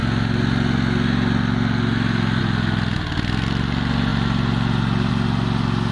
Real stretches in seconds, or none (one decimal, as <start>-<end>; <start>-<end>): 0.0-5.9